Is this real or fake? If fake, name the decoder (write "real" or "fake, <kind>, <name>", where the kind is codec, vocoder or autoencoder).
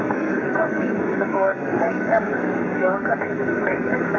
fake, codec, SNAC